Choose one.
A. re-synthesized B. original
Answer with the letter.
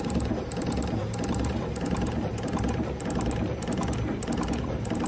A